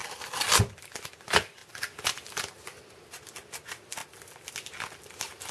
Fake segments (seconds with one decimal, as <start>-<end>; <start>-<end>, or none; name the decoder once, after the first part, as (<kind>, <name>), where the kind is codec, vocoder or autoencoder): none

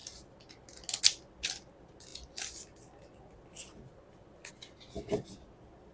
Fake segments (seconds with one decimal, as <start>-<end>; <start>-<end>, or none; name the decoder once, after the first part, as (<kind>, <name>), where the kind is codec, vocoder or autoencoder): none

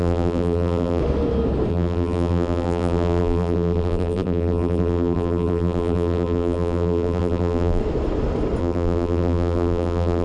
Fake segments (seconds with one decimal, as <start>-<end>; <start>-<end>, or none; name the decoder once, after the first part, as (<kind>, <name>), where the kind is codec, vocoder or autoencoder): 0.0-1.0 (vocoder, BigVGAN v2); 1.7-7.8; 8.6-10.2